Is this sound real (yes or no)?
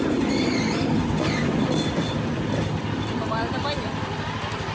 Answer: yes